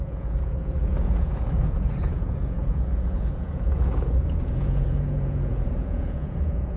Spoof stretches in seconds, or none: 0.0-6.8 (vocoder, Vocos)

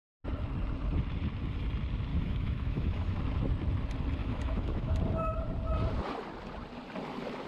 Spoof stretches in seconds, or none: 2.1-3.2 (autoencoder, DAC-VAE); 4.2-5.0

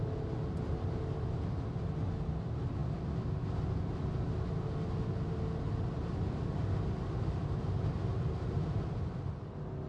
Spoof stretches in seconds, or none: none

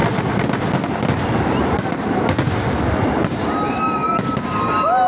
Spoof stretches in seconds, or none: none